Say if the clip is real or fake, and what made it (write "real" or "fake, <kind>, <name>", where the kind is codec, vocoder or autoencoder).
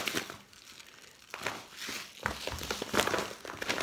real